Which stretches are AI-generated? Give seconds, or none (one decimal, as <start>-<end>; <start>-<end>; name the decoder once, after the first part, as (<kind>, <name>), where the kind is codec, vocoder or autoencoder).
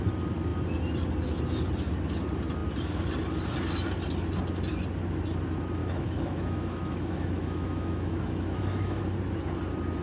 5.8-9.0 (autoencoder, DAC-VAE)